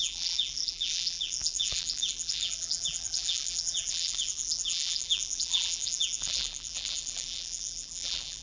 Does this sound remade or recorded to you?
remade